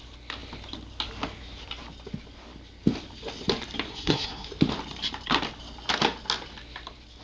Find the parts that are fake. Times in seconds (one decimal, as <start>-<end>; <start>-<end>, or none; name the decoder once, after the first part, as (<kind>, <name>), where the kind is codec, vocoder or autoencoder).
3.9-4.5 (codec, SNAC)